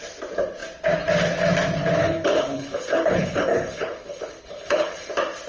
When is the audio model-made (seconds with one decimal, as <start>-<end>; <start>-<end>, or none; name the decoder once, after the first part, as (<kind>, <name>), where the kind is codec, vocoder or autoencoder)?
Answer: 2.0-5.1 (codec, HILCodec)